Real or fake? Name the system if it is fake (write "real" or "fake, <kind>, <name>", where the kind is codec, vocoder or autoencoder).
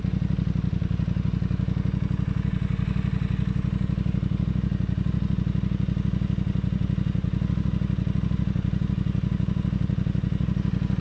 real